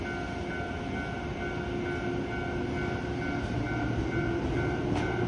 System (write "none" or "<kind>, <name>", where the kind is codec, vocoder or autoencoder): none